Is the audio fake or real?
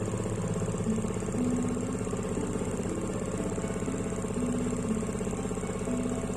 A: real